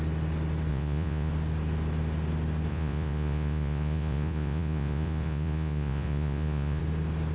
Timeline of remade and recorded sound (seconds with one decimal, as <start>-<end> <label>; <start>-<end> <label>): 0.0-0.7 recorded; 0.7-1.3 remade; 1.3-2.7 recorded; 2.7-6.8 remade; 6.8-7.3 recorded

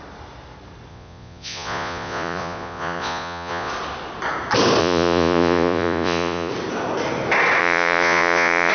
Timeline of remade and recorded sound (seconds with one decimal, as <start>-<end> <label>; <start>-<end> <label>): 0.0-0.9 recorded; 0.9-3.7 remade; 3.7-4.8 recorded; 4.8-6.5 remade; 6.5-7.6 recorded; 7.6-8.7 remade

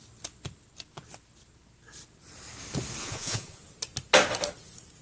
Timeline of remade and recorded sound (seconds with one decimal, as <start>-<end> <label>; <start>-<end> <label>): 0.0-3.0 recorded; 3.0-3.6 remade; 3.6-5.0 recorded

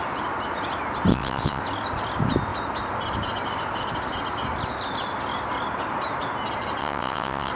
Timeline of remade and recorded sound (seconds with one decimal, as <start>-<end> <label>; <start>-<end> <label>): 0.0-1.1 recorded; 1.1-1.6 remade; 1.6-6.8 recorded; 6.8-7.5 remade

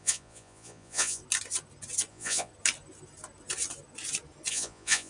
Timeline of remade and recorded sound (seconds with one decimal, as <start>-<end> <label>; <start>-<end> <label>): 0.0-1.2 remade; 1.2-2.1 recorded; 2.1-2.5 remade; 2.5-4.5 recorded; 4.5-5.1 remade